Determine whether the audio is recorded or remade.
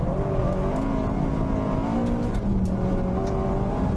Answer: recorded